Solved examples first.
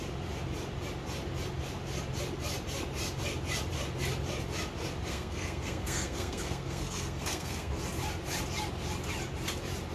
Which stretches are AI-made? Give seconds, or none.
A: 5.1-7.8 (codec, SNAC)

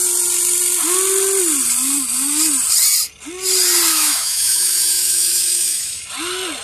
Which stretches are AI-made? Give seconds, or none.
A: 3.9-6.0 (autoencoder, DAC-VAE)

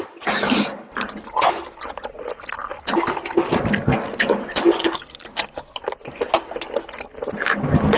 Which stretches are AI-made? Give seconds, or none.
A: none

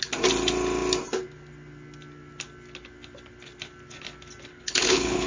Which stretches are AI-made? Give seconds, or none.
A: 4.5-5.3 (codec, HILCodec)

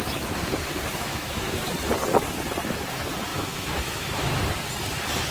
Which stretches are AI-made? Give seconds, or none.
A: 0.9-1.7 (autoencoder, DAC-VAE); 3.3-4.4

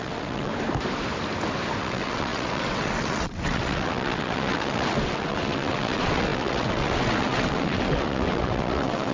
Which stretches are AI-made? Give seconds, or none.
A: 0.0-0.5 (vocoder, WaveNeXt); 1.8-9.1

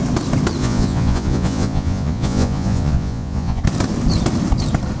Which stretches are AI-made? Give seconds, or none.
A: 0.6-3.6 (vocoder, Vocos)

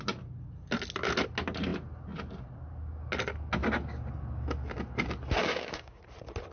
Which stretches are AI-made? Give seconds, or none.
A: 5.4-6.0 (codec, DAC)